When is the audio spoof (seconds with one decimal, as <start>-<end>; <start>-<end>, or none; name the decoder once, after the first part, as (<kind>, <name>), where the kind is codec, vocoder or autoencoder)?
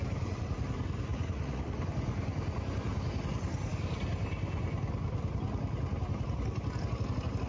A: 1.1-1.8 (vocoder, Vocos)